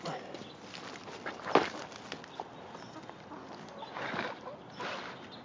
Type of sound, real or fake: real